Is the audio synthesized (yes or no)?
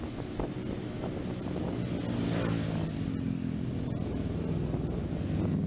no